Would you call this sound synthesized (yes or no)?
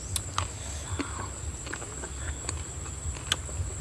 no